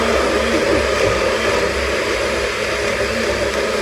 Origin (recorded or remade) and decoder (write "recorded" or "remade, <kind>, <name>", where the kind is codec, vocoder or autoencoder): recorded